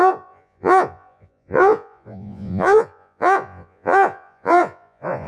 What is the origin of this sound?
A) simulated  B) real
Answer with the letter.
A